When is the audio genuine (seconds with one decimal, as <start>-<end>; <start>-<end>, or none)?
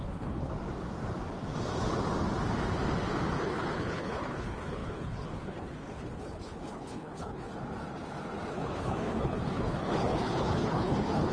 0.5-3.4; 7.5-8.5